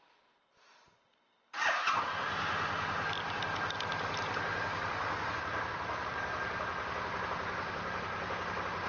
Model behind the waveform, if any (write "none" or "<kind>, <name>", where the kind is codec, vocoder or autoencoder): none